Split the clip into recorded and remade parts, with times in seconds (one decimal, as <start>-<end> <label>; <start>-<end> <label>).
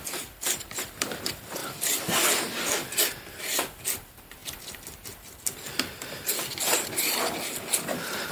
0.0-8.3 recorded